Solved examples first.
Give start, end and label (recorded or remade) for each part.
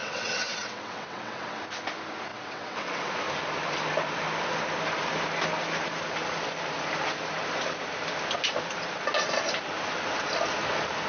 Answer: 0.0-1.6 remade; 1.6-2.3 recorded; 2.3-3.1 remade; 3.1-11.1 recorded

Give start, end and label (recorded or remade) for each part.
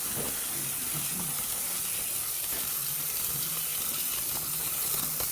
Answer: 0.0-5.3 recorded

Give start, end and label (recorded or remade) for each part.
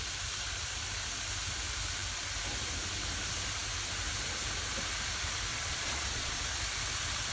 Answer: 0.0-5.5 recorded; 5.5-6.4 remade; 6.4-7.3 recorded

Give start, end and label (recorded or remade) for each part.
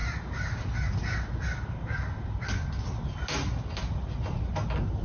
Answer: 0.0-5.0 recorded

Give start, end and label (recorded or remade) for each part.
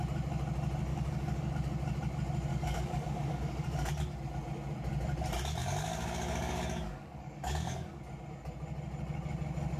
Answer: 0.0-0.9 recorded; 0.9-1.5 remade; 1.5-2.5 recorded; 2.5-3.9 remade; 3.9-5.6 recorded; 5.6-8.0 remade; 8.0-9.8 recorded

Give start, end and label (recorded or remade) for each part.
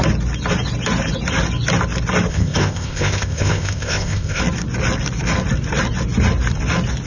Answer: 0.0-2.3 recorded; 2.3-4.4 remade; 4.4-7.1 recorded